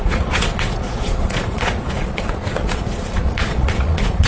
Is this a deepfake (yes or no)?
yes